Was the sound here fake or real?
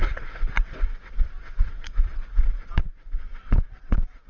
fake